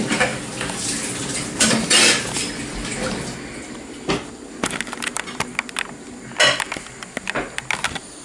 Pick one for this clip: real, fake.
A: real